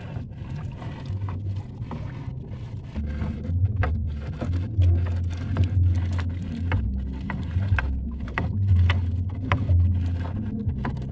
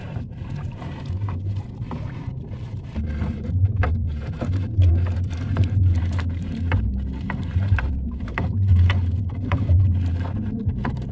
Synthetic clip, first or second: second